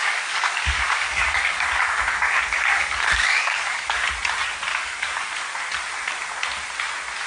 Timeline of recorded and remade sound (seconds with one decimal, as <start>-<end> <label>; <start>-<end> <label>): 0.0-4.0 remade; 4.0-4.7 recorded; 4.7-5.3 remade; 5.3-7.3 recorded